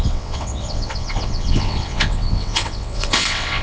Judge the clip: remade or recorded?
remade